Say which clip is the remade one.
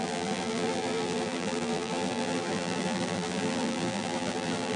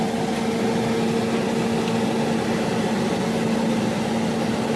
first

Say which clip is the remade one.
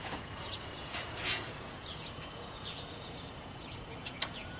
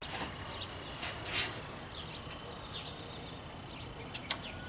first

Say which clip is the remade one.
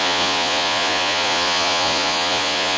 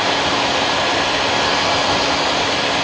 first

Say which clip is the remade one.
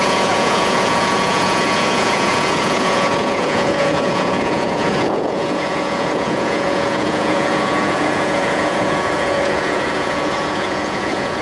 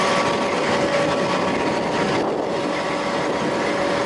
first